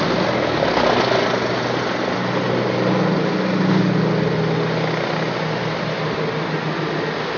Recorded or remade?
recorded